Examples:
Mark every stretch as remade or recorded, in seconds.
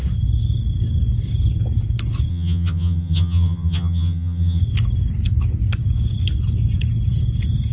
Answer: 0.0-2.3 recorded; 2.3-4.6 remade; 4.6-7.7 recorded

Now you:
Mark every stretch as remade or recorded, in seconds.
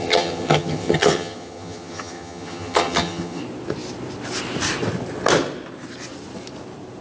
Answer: 0.0-3.4 remade; 3.4-7.0 recorded